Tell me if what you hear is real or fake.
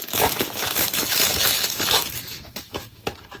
fake